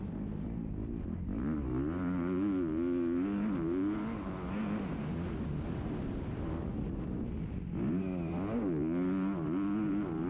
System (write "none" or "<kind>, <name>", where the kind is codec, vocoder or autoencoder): none